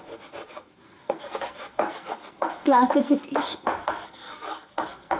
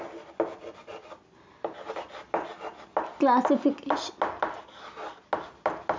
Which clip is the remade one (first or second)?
first